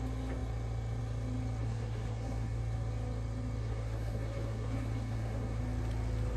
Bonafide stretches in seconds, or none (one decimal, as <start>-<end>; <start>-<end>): 0.0-1.6; 2.6-3.6; 5.6-6.4